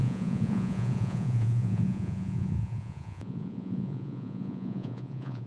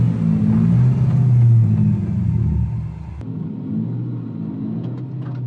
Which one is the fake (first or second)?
first